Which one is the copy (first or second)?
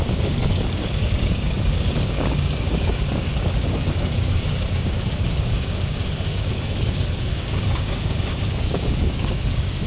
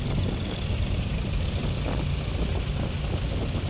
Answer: first